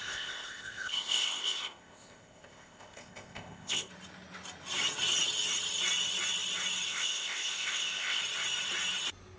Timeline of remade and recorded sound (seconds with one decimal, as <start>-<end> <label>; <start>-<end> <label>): 0.0-3.9 remade; 3.9-6.9 recorded; 6.9-8.2 remade; 8.2-9.4 recorded